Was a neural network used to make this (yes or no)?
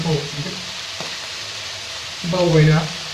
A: yes